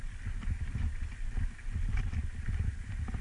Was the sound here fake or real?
real